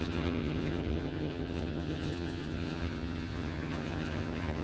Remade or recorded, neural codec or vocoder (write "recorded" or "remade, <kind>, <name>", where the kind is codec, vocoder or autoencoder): remade, vocoder, HiFi-GAN